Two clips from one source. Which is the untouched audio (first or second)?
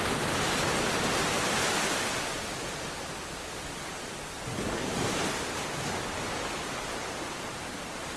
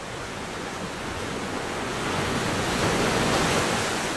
first